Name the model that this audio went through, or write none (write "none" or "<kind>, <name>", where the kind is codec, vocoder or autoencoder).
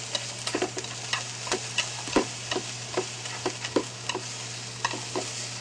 none